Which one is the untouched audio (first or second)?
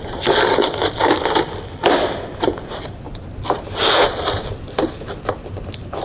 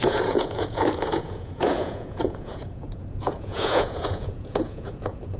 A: first